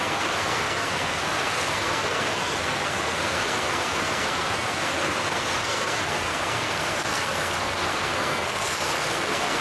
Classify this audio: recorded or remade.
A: remade